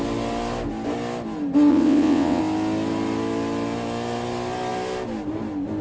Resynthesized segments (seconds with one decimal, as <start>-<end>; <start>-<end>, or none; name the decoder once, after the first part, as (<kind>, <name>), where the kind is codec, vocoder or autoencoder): 1.7-2.4 (vocoder, WaveNeXt)